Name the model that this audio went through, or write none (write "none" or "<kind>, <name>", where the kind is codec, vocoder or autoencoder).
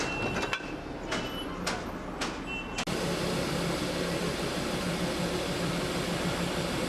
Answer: none